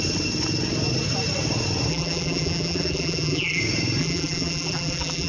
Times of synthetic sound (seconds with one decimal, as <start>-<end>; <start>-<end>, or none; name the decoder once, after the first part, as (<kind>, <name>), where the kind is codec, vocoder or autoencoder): 1.9-3.6 (vocoder, BigVGAN v2); 4.0-5.3